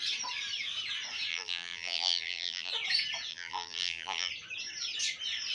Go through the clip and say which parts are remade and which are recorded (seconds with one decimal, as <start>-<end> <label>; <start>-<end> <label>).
0.0-1.3 recorded; 1.3-2.7 remade; 2.7-3.3 recorded; 3.3-4.3 remade; 4.3-5.5 recorded